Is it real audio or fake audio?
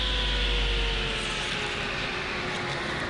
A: real